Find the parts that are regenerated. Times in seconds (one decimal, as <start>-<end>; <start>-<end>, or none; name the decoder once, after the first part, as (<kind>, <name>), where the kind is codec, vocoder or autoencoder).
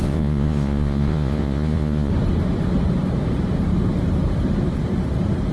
0.0-2.1 (vocoder, Vocos)